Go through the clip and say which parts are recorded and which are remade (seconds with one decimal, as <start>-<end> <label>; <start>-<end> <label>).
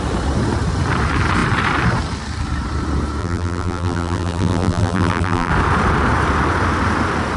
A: 0.0-3.2 recorded; 3.2-5.5 remade; 5.5-7.4 recorded